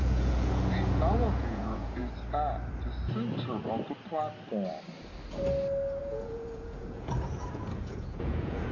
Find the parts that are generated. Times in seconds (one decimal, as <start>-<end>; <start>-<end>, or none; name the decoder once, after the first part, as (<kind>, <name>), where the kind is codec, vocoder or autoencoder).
0.0-2.0 (vocoder, Vocos); 6.0-8.7